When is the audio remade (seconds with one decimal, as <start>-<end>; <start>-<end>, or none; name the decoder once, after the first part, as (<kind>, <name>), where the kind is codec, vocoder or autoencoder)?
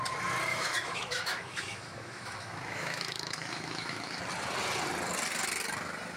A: 0.5-4.2 (autoencoder, DAC-VAE)